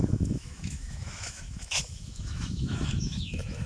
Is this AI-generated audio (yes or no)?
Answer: yes